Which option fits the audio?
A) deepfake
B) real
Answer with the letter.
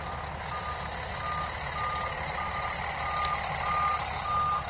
B